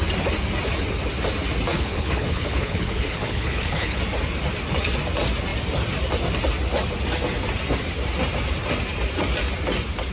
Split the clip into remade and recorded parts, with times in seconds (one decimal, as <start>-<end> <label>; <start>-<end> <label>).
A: 0.0-1.7 recorded; 1.7-4.0 remade; 4.0-10.1 recorded

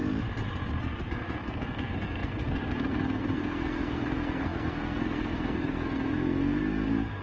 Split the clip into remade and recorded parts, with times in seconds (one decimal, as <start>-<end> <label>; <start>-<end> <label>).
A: 0.0-0.8 recorded; 0.8-7.2 remade

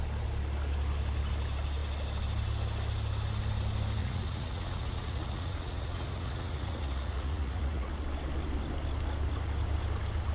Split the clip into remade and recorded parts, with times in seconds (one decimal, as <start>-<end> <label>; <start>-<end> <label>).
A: 0.0-4.0 recorded; 4.0-7.9 remade; 7.9-10.3 recorded

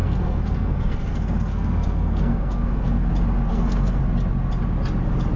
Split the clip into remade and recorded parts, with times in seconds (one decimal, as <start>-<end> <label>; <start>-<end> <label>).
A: 0.0-3.1 remade; 3.1-3.5 recorded; 3.5-4.0 remade; 4.0-5.4 recorded

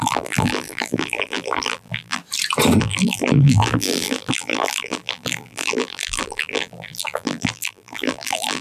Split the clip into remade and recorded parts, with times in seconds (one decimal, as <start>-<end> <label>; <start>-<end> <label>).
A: 0.0-2.2 remade; 2.2-2.8 recorded; 2.8-8.6 remade

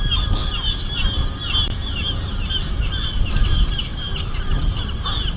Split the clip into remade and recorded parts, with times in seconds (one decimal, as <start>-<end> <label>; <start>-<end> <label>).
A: 0.0-0.4 recorded; 0.4-2.7 remade; 2.7-5.4 recorded

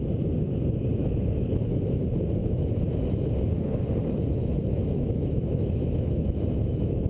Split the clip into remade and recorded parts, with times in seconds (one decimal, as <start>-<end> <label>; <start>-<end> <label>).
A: 0.0-1.0 recorded; 1.0-1.8 remade; 1.8-2.4 recorded; 2.4-3.3 remade; 3.3-4.4 recorded; 4.4-7.1 remade